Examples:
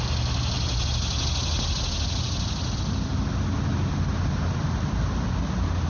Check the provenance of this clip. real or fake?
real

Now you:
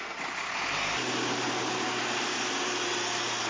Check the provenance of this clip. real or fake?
real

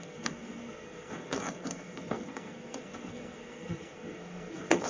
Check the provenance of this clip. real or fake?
fake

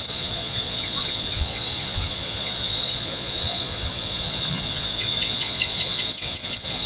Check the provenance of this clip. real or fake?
fake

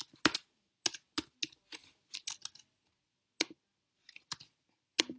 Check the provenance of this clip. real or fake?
real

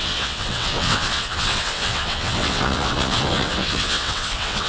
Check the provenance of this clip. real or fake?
fake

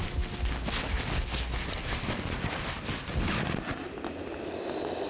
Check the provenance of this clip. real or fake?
real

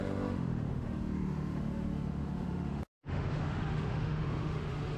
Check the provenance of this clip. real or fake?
fake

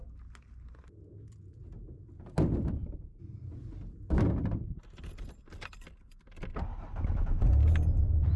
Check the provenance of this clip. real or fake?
real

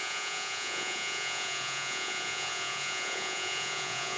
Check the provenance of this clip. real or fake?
fake